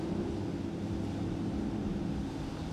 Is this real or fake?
real